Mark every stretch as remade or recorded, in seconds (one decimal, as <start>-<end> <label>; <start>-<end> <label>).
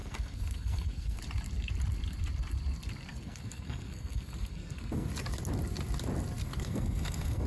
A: 0.0-1.2 remade; 1.2-3.1 recorded; 3.1-5.1 remade; 5.1-6.4 recorded; 6.4-7.5 remade